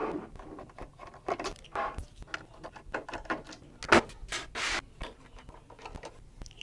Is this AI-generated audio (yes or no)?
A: no